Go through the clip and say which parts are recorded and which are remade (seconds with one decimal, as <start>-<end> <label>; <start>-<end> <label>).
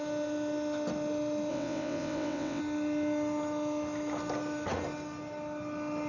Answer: 0.0-1.5 recorded; 1.5-2.6 remade; 2.6-6.1 recorded